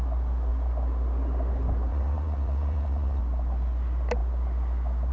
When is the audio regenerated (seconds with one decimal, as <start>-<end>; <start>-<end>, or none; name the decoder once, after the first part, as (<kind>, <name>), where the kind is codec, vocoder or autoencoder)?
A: 1.9-3.2 (vocoder, Vocos)